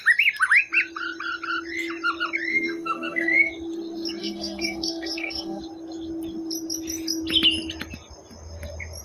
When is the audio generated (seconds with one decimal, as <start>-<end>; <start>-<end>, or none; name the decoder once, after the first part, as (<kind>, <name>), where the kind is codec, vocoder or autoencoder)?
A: 2.5-3.5 (codec, SNAC); 4.2-5.6